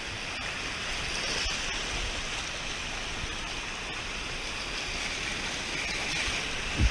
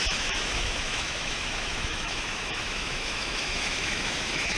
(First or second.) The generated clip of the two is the second